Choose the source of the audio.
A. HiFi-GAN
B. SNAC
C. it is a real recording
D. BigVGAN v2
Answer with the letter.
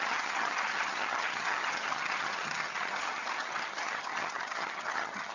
A